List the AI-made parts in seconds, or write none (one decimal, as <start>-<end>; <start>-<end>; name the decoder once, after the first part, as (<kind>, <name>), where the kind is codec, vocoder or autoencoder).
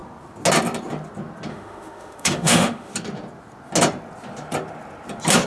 1.5-2.9 (autoencoder, DAC-VAE)